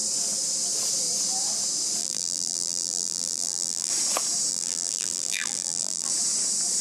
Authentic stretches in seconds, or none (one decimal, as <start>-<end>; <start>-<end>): 0.0-2.0; 3.9-4.5; 6.1-6.8